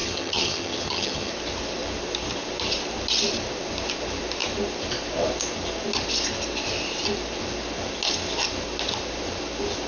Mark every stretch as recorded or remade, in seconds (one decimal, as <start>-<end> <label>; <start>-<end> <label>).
0.0-1.3 remade; 1.3-9.9 recorded